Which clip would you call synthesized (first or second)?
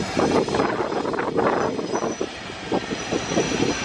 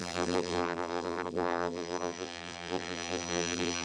second